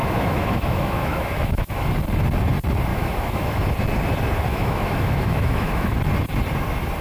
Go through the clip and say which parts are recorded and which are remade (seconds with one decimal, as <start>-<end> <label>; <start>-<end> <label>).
0.0-1.9 remade; 1.9-2.9 recorded; 2.9-3.6 remade; 3.6-4.5 recorded; 4.5-6.0 remade; 6.0-7.0 recorded